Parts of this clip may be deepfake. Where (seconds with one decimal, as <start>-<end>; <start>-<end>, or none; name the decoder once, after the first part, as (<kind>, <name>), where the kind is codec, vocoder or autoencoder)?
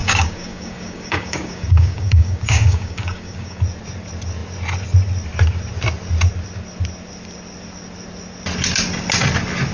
0.0-3.6 (codec, DAC)